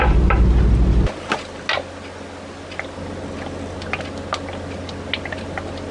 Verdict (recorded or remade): recorded